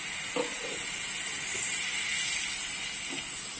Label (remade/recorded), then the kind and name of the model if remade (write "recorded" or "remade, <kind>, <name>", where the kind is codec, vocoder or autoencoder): recorded